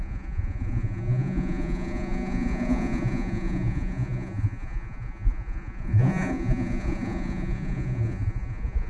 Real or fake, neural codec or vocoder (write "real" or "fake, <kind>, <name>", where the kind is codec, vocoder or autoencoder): fake, vocoder, Vocos